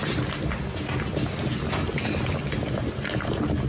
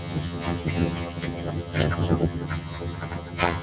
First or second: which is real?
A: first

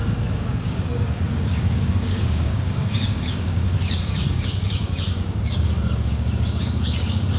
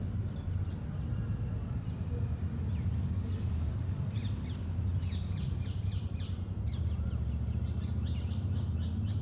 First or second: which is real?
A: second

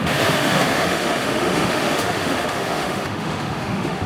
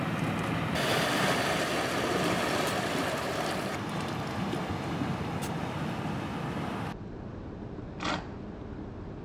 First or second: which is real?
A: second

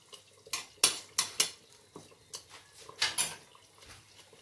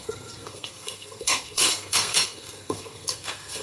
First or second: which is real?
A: first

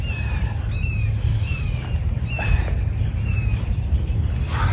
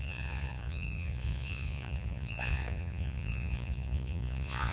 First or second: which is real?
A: first